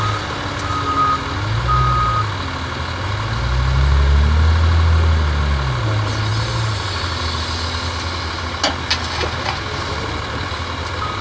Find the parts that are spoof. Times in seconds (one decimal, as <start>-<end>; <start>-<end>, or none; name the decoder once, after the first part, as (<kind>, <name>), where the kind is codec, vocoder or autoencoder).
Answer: none